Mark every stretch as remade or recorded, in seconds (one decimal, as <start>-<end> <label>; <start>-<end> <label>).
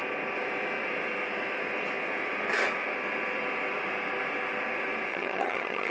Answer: 0.0-5.1 recorded; 5.1-5.9 remade